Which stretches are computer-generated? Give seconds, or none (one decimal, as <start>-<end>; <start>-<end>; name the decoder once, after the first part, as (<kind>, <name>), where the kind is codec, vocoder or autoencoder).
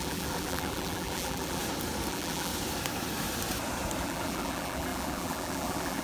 0.0-1.6 (vocoder, BigVGAN v2); 2.1-2.5; 4.0-6.0